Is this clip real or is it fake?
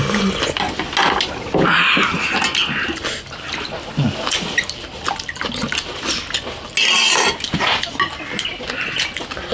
real